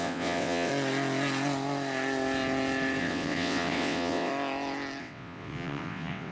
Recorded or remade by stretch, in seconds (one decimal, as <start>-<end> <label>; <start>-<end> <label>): 0.0-0.7 remade; 0.7-3.0 recorded; 3.0-4.3 remade; 4.3-5.0 recorded; 5.0-6.3 remade